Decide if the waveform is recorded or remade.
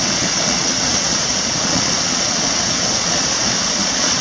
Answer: remade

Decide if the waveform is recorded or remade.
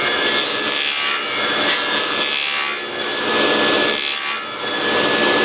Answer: recorded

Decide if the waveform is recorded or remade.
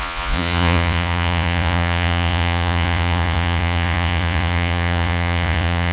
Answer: remade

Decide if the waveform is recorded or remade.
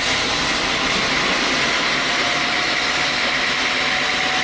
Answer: recorded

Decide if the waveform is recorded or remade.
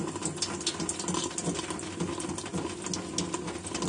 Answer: recorded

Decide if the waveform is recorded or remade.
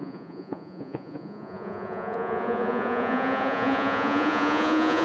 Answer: remade